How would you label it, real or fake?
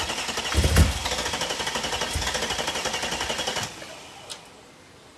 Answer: real